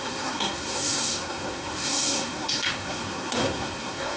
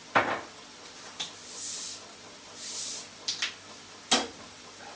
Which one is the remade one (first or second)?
first